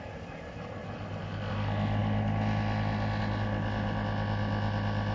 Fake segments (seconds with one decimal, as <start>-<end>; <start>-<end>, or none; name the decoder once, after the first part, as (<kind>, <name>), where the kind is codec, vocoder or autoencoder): none